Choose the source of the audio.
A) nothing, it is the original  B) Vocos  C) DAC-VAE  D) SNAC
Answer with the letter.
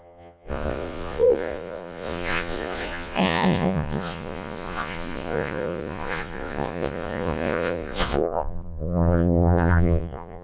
B